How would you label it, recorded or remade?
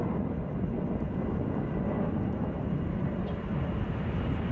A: recorded